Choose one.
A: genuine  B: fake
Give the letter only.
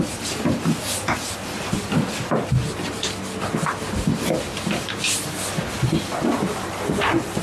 A